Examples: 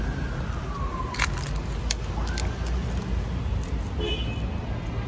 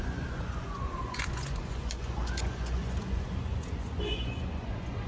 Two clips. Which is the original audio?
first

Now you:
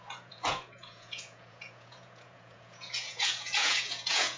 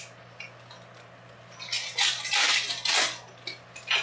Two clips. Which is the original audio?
second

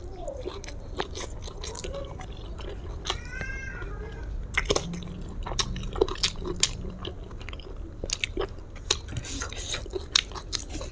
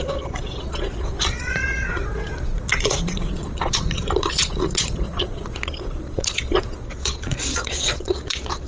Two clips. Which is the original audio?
first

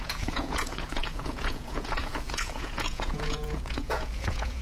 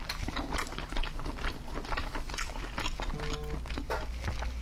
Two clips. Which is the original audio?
second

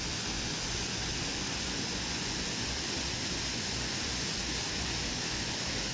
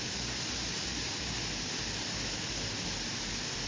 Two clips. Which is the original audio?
second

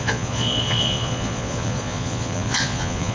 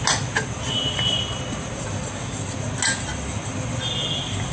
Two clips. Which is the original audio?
second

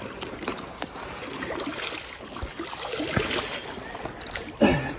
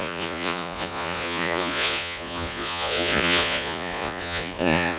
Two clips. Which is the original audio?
first